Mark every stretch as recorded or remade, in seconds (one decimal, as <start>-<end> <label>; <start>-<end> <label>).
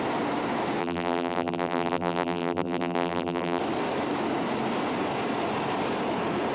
0.0-0.8 recorded; 0.8-3.6 remade; 3.6-6.5 recorded